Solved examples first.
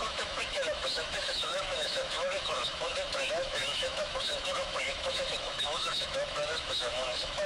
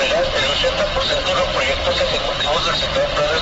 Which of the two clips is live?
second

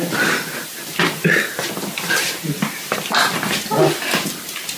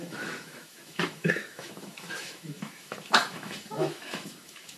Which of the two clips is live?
first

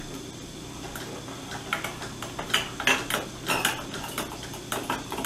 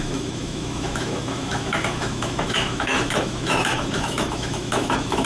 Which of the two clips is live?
first